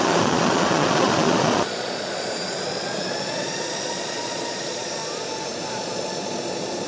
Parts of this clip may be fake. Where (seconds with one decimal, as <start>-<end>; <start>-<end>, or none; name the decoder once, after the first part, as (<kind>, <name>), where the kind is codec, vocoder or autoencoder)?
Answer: 0.0-5.0 (vocoder, Vocos); 5.7-6.9